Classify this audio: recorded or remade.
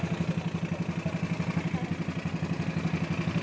recorded